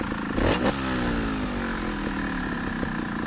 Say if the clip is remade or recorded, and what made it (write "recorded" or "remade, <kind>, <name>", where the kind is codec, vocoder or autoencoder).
recorded